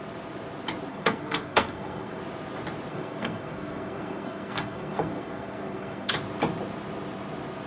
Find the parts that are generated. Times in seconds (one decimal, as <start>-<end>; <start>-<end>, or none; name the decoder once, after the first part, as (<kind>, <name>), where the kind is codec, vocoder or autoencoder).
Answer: 0.9-2.2 (codec, SNAC); 2.9-6.1